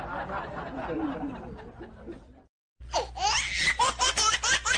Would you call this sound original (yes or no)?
yes